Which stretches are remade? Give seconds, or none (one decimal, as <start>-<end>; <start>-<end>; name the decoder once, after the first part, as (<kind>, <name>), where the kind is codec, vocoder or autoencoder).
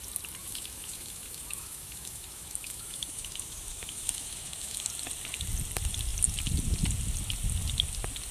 0.4-4.9 (autoencoder, DAC-VAE)